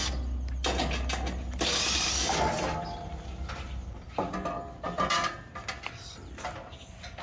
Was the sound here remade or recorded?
recorded